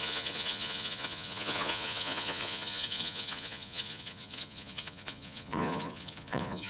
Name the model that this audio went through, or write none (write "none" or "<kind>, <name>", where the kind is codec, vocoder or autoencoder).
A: vocoder, Vocos